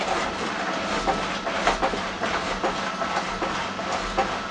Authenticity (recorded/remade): recorded